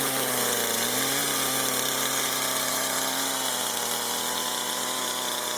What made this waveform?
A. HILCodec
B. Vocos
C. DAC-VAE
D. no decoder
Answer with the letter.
D